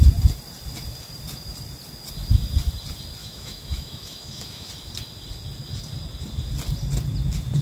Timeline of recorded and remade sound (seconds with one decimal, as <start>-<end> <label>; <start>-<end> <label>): 0.0-3.2 recorded; 3.2-4.7 remade; 4.7-7.6 recorded